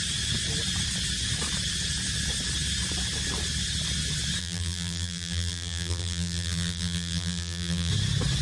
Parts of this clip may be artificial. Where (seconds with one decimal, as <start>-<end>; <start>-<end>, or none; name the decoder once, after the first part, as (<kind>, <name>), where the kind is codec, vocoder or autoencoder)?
4.4-7.9 (vocoder, BigVGAN v2)